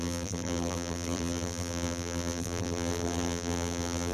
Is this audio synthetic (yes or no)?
yes